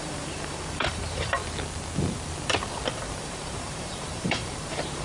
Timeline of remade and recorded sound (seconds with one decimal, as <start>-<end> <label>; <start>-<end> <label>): 0.0-1.4 remade; 1.4-3.2 recorded; 3.2-5.0 remade